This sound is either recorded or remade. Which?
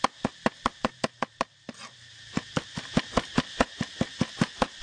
recorded